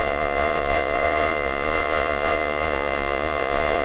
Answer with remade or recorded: remade